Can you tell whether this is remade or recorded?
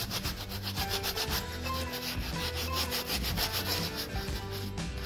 recorded